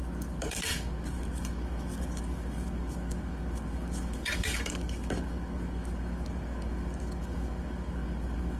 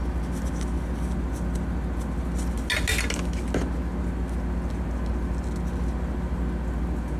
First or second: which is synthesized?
first